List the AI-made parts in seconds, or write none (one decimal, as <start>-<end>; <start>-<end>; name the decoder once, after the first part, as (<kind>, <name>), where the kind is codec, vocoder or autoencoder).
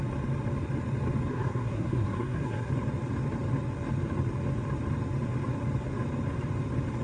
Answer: 1.3-2.7 (codec, SNAC)